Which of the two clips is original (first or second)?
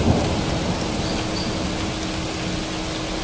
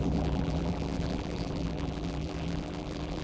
first